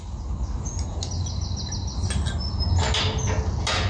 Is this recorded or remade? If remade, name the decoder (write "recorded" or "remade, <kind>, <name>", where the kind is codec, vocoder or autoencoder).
recorded